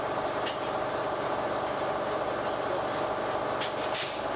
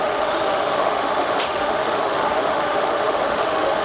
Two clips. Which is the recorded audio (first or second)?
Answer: first